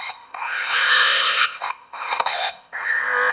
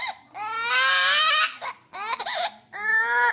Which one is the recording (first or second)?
second